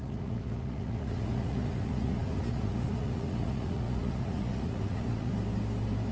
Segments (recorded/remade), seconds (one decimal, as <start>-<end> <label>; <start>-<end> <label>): 0.0-5.3 remade; 5.3-6.1 recorded